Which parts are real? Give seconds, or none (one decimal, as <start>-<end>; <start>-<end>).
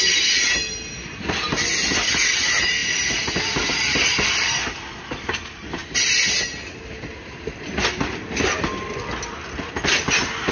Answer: 0.0-10.5